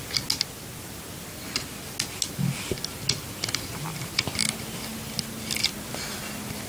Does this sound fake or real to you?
real